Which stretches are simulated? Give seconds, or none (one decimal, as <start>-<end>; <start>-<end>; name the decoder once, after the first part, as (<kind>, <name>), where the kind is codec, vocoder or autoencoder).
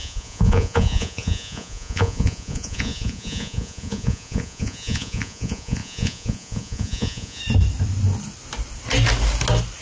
0.0-7.4 (vocoder, Vocos)